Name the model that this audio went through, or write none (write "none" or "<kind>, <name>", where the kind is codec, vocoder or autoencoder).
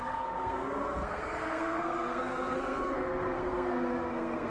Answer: codec, SNAC